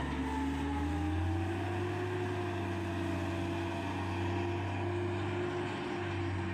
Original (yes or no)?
yes